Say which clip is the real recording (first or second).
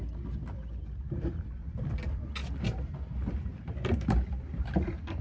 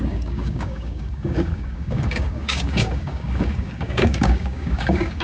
first